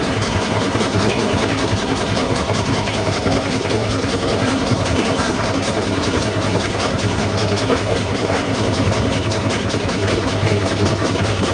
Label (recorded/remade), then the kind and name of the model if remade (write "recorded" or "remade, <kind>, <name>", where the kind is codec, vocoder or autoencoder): remade, codec, SNAC